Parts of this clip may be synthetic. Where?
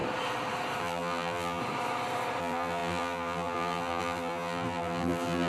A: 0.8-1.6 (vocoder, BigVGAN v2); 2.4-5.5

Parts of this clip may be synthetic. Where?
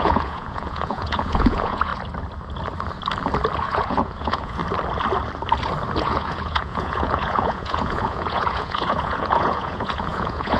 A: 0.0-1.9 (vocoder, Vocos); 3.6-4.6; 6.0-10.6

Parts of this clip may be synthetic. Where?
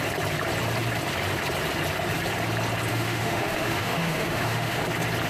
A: 2.9-4.8 (autoencoder, DAC-VAE)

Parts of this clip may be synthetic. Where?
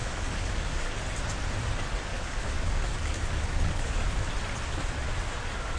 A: 0.0-1.0 (codec, DAC); 2.1-4.3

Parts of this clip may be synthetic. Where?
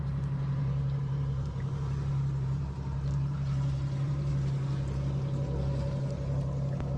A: 0.5-4.3 (vocoder, BigVGAN v2)